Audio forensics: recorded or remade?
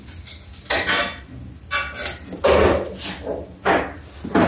recorded